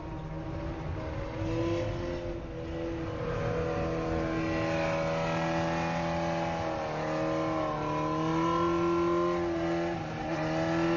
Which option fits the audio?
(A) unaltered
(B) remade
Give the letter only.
A